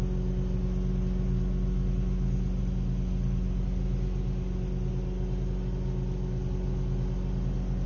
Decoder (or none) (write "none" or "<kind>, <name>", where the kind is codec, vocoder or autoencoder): none